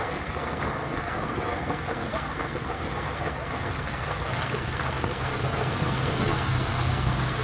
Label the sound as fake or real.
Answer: fake